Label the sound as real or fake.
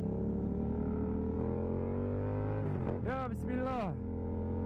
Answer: real